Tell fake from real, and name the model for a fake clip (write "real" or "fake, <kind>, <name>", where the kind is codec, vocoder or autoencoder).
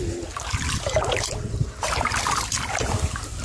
real